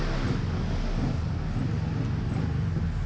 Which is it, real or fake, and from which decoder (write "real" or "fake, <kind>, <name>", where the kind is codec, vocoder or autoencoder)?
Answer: real